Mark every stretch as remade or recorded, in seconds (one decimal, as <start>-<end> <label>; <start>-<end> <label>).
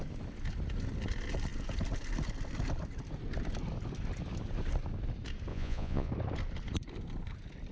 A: 0.0-5.5 recorded; 5.5-6.1 remade; 6.1-7.7 recorded